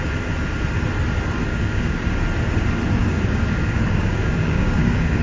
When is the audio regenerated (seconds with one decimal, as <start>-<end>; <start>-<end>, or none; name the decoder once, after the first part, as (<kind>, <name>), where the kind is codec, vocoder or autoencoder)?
1.5-2.0 (codec, DAC); 3.0-5.2